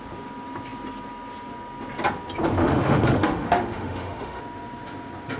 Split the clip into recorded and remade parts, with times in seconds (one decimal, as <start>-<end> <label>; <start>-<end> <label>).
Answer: 0.0-2.6 recorded; 2.6-4.4 remade; 4.4-5.4 recorded